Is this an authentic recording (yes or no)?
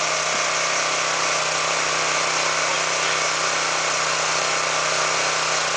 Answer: yes